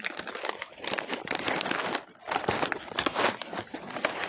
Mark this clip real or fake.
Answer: real